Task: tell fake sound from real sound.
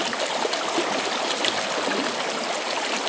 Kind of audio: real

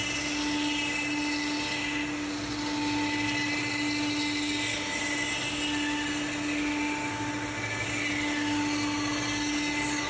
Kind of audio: real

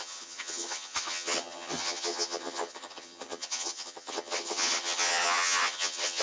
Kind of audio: fake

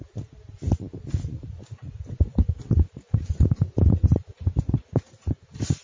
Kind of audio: real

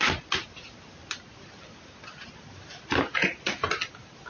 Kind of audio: real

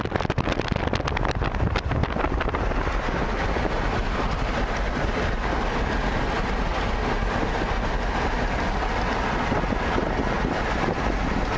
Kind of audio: real